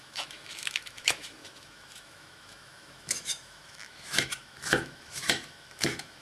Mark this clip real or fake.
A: fake